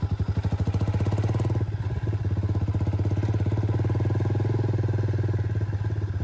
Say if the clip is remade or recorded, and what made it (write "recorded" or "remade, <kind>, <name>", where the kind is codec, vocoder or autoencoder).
recorded